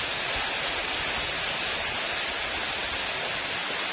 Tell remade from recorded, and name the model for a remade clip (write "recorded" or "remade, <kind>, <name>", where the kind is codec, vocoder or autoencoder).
recorded